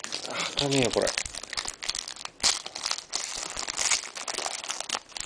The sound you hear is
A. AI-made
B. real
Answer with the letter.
B